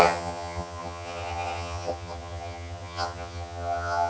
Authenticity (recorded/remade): remade